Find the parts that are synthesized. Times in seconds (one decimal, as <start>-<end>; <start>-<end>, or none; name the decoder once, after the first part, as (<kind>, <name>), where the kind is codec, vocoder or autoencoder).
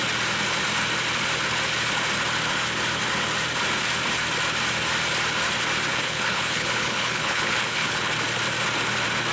5.9-8.1 (codec, HILCodec)